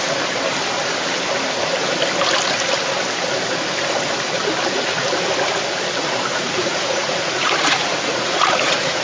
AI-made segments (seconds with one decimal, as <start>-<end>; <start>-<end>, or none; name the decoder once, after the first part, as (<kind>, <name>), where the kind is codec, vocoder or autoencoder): 6.3-9.0 (vocoder, Vocos)